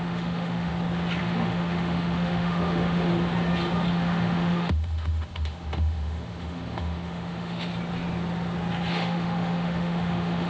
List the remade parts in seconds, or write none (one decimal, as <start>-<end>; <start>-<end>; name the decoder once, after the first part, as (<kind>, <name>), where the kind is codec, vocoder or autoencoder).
0.0-0.7 (autoencoder, DAC-VAE); 1.2-3.1; 3.9-7.7; 8.9-10.5